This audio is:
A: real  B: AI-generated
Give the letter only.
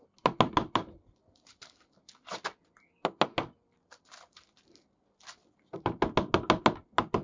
A